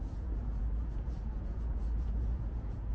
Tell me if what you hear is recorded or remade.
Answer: remade